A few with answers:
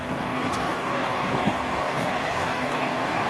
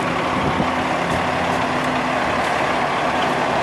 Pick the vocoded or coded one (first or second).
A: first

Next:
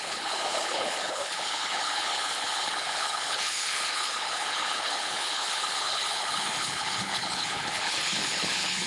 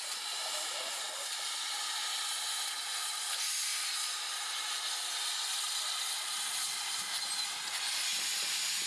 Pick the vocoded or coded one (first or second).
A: first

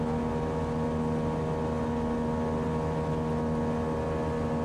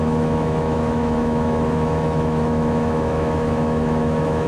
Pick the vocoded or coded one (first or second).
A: second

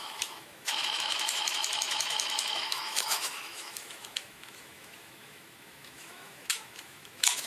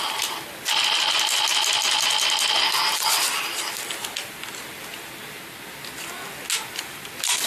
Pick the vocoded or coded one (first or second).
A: first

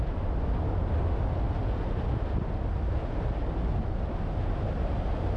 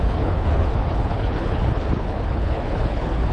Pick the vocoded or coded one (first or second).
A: second